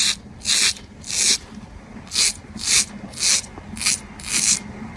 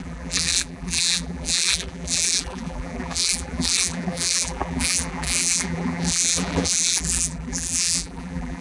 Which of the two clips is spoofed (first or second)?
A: second